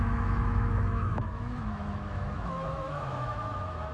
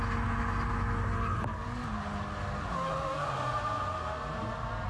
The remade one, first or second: first